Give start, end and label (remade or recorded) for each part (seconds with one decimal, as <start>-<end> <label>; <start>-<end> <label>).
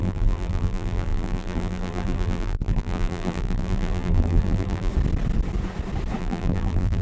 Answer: 0.0-4.9 remade; 4.9-6.2 recorded; 6.2-7.0 remade